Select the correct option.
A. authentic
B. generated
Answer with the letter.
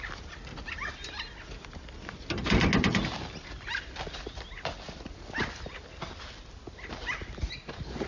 A